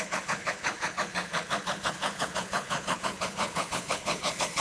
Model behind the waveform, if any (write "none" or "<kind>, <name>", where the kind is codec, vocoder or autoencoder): codec, HILCodec